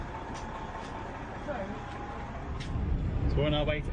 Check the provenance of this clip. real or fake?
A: real